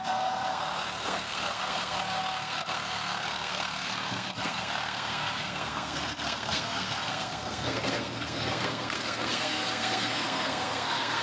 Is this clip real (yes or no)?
no